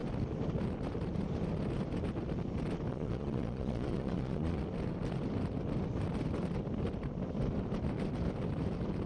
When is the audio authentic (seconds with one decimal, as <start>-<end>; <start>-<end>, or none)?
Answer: 0.0-2.9; 4.6-9.1

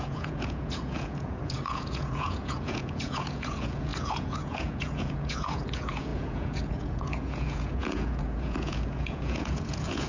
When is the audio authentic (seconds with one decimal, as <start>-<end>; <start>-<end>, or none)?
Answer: none

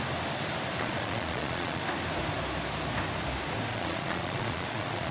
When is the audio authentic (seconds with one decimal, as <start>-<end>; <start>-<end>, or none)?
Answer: 0.0-0.8; 1.8-3.7